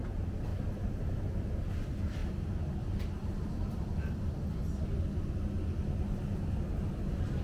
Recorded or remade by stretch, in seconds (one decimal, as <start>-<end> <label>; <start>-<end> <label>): 0.0-0.5 recorded; 0.5-1.1 remade; 1.1-2.2 recorded; 2.2-4.6 remade; 4.6-7.4 recorded